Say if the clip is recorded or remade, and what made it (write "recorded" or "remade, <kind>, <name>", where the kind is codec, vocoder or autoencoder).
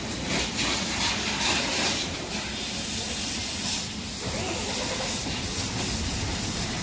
recorded